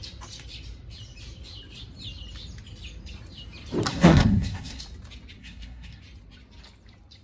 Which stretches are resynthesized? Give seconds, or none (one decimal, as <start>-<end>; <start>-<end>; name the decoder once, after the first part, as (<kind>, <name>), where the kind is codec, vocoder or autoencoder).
3.9-4.8 (codec, SNAC); 5.4-6.0